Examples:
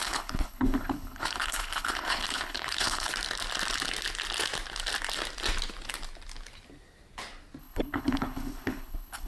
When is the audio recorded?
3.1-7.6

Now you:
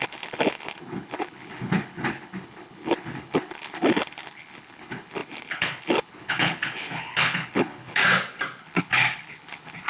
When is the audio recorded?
8.0-8.6

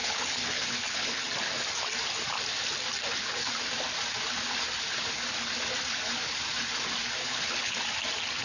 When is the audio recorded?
1.3-7.2; 7.8-8.4

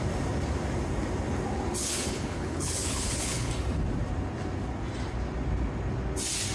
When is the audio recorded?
0.0-1.8; 3.5-6.5

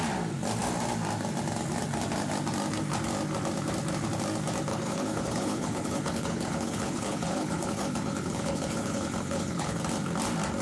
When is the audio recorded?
0.0-4.7; 9.8-10.6

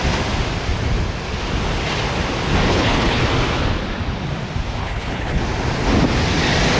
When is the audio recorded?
0.0-2.7; 3.2-4.8; 5.4-6.8

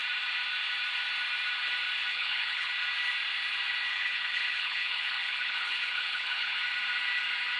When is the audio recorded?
0.0-2.1; 2.7-3.9; 6.6-7.6